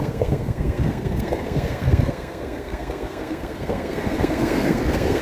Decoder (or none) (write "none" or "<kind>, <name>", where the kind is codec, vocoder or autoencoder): codec, SNAC